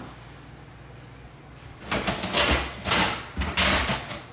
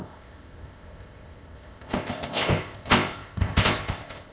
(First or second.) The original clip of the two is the first